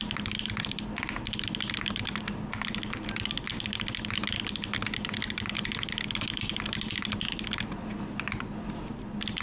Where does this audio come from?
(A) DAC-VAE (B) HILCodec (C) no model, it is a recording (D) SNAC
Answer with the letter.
C